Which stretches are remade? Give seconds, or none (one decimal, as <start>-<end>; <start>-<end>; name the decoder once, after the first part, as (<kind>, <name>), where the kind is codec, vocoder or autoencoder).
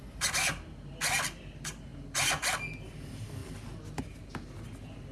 none